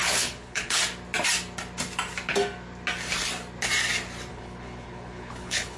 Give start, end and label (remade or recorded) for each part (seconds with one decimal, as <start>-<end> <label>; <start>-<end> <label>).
0.0-0.8 remade; 0.8-4.3 recorded; 4.3-5.8 remade